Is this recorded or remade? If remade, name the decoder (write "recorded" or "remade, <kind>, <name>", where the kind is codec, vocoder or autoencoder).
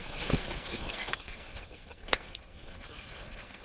remade, codec, SNAC